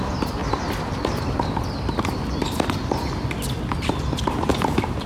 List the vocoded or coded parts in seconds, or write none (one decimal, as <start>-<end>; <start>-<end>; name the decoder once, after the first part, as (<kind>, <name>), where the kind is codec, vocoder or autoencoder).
0.0-0.4 (vocoder, BigVGAN v2); 0.9-2.8; 4.5-5.1

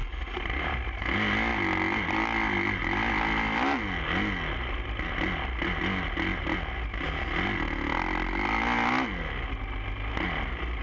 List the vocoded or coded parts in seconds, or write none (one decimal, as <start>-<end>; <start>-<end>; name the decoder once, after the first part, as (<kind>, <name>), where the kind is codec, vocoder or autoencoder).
0.0-0.8 (vocoder, BigVGAN v2)

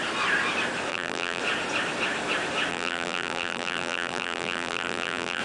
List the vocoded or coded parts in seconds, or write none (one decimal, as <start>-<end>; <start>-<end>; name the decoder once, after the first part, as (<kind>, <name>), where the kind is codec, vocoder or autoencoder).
0.9-1.4 (vocoder, BigVGAN v2); 2.7-5.4

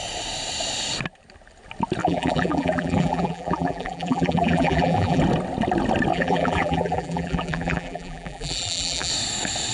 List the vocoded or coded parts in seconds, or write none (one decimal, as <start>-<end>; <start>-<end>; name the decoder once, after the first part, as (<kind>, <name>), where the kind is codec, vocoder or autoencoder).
2.0-5.2 (vocoder, BigVGAN v2); 6.1-9.1

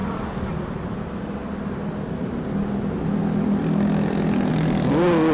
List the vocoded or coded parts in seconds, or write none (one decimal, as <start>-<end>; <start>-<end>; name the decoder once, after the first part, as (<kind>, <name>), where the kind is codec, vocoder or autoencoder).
0.0-0.8 (vocoder, BigVGAN v2); 1.4-2.3

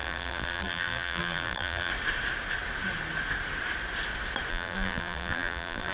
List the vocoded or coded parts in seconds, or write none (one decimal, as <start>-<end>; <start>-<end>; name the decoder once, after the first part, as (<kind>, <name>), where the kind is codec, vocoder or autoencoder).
0.0-1.9 (vocoder, BigVGAN v2); 4.5-5.9

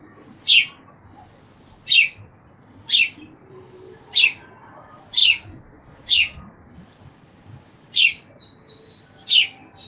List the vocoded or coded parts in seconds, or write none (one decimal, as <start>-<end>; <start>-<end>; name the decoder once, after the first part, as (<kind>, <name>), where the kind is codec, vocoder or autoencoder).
2.8-4.7 (vocoder, BigVGAN v2); 5.2-5.9

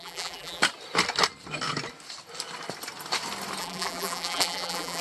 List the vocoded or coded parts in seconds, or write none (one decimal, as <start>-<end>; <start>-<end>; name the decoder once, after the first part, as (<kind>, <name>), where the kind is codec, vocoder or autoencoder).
0.0-0.6 (vocoder, BigVGAN v2); 3.6-5.0